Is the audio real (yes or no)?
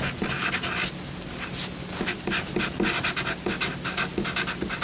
yes